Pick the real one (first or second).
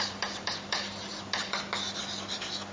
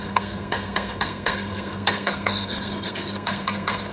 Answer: first